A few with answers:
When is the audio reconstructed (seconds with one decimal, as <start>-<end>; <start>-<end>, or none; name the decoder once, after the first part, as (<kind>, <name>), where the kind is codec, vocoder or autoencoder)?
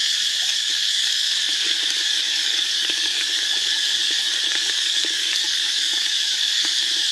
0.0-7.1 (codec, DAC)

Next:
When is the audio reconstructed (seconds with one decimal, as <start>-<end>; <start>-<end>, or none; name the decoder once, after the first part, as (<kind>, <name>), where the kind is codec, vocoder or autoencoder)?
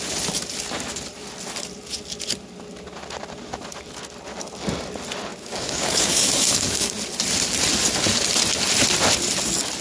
5.3-6.9 (codec, DAC)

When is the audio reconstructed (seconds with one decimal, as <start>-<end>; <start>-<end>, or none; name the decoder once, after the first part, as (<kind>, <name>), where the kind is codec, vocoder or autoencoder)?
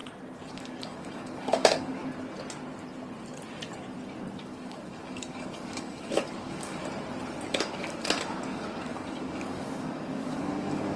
0.5-2.0 (codec, DAC); 4.4-6.8; 7.5-11.0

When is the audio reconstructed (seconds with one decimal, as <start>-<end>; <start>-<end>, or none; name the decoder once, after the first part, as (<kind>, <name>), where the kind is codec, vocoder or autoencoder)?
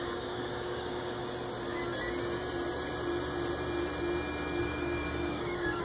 0.0-1.2 (codec, DAC); 4.6-5.8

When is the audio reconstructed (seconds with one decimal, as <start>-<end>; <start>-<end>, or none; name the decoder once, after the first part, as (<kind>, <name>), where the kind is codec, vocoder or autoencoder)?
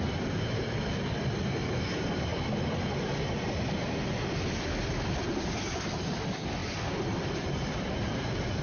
none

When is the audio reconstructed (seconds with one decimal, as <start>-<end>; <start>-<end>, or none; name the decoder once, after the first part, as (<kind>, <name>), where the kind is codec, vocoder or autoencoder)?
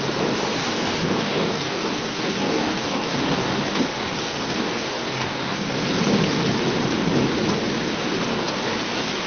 0.6-5.8 (codec, DAC); 8.3-9.3